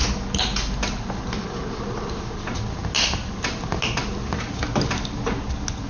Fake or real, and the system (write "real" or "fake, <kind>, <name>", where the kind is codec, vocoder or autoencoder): real